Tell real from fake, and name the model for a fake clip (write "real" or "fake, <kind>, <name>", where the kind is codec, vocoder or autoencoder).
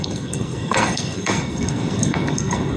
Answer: fake, codec, SNAC